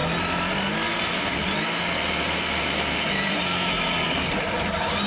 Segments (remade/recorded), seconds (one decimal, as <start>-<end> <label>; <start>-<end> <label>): 0.0-3.1 recorded; 3.1-5.1 remade